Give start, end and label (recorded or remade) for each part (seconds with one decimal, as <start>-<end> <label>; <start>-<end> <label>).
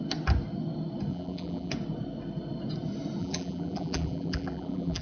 0.0-1.1 recorded; 1.1-1.7 remade; 1.7-3.2 recorded; 3.2-5.0 remade